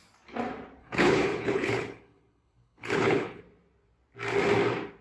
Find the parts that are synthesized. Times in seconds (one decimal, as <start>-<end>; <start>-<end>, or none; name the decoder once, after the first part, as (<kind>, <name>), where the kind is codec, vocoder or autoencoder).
0.8-3.4 (codec, HILCodec)